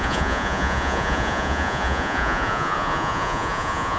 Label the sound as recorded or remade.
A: remade